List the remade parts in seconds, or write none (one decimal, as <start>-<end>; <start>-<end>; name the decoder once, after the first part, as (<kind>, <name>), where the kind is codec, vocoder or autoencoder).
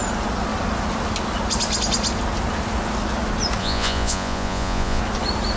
3.6-5.0 (vocoder, Vocos)